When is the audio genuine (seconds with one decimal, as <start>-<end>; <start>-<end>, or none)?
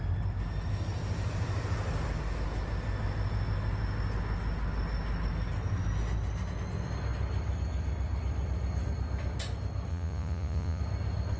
0.0-9.9; 10.8-11.4